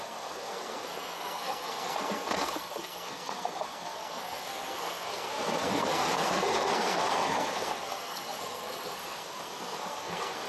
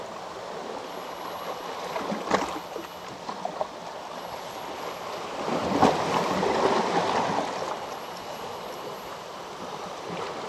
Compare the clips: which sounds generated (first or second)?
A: first